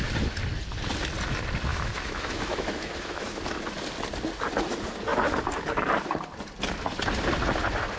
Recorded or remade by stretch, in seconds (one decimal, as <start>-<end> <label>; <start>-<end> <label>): 0.0-1.7 recorded; 1.7-3.4 remade; 3.4-8.0 recorded